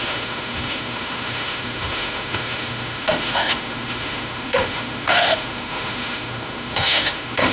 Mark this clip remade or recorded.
remade